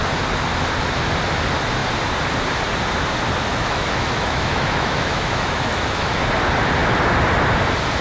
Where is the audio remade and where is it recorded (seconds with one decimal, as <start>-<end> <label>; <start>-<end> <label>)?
0.0-3.5 recorded; 3.5-6.1 remade; 6.1-8.0 recorded